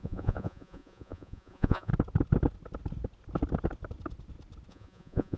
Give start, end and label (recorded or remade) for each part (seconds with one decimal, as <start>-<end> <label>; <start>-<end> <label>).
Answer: 0.0-1.9 remade; 1.9-4.7 recorded; 4.7-5.4 remade